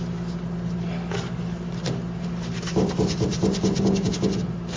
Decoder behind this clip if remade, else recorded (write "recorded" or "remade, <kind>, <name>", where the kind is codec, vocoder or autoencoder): recorded